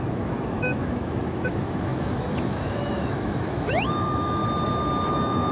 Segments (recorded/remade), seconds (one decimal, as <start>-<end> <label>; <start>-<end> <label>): 0.0-4.4 remade; 4.4-5.1 recorded; 5.1-5.5 remade